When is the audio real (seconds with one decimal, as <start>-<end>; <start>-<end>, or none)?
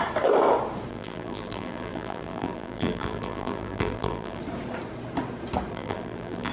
0.0-0.9; 4.4-5.7